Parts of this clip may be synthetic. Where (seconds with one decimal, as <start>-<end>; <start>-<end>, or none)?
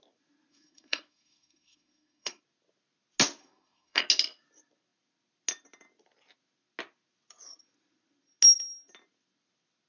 0.5-2.4; 3.4-4.0